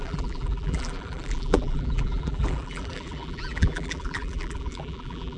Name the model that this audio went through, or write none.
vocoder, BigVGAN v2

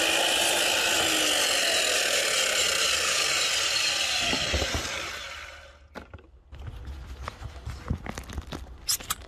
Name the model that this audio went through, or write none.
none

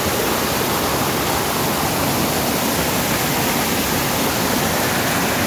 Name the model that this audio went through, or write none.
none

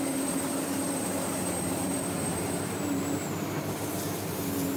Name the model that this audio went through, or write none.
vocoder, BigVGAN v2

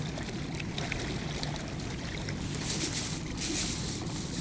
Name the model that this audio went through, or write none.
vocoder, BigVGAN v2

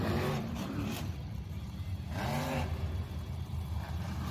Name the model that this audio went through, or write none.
vocoder, BigVGAN v2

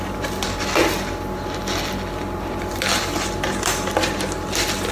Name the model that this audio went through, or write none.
none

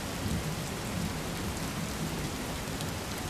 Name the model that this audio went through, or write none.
vocoder, BigVGAN v2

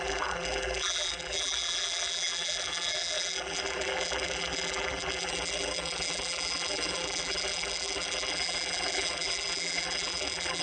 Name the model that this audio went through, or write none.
vocoder, BigVGAN v2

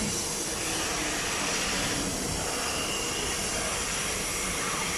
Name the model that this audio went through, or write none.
none